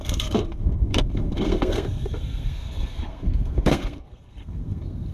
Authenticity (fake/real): fake